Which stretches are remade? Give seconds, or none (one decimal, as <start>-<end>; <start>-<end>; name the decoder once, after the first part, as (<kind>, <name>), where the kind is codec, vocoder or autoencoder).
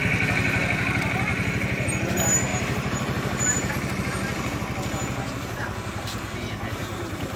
1.3-1.9 (vocoder, BigVGAN v2); 2.5-3.7